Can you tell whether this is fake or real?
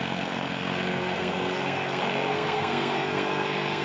fake